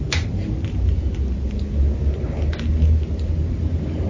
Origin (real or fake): real